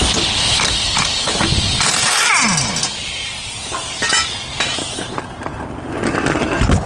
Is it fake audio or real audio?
real